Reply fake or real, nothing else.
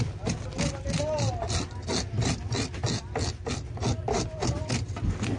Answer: real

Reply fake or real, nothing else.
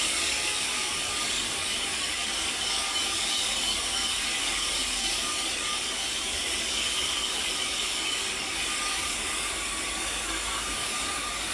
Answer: fake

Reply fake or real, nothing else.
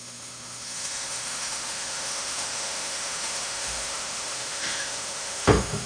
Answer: fake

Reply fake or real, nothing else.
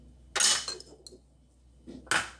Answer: real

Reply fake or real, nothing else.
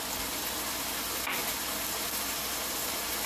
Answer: real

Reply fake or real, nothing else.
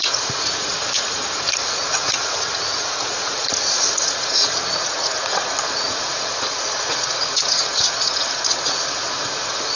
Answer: fake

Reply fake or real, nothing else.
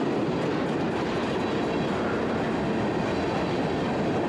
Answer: real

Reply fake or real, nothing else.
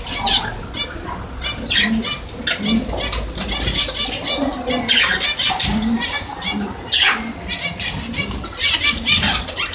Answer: real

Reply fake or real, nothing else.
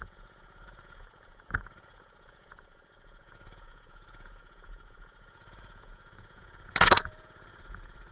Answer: fake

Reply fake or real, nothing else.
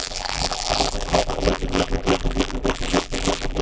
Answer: fake